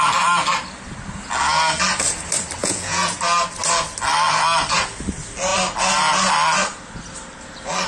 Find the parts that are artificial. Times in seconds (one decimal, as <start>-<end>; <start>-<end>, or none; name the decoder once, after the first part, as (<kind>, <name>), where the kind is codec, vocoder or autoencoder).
2.6-3.2 (vocoder, Vocos)